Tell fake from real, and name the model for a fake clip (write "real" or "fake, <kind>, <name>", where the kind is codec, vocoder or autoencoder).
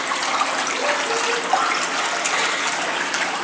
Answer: real